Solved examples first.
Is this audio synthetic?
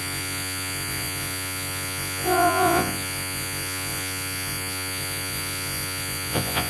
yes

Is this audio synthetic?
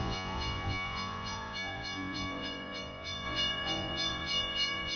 yes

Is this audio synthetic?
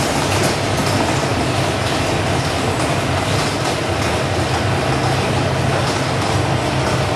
no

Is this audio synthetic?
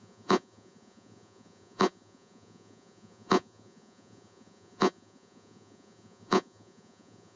yes